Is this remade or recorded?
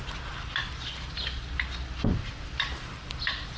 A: remade